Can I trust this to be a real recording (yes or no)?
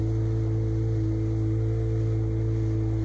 yes